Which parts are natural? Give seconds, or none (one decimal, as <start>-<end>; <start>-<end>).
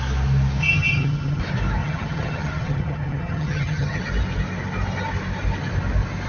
0.0-0.6; 1.4-1.8; 4.0-6.3